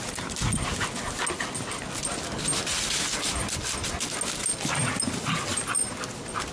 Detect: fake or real real